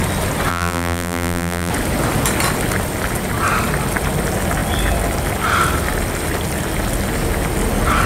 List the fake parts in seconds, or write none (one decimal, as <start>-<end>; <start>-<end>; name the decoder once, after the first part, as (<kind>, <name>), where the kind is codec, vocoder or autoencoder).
0.5-1.7 (vocoder, BigVGAN v2)